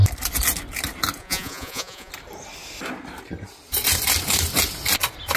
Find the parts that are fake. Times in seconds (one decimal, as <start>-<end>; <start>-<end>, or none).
1.2-2.1